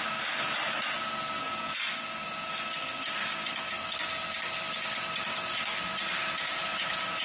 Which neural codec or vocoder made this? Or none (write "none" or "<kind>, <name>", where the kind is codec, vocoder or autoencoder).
none